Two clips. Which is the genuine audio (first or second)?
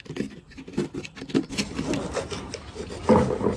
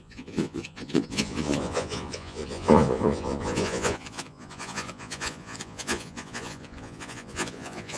first